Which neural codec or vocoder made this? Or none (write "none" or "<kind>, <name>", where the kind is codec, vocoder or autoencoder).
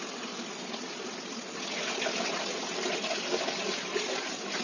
none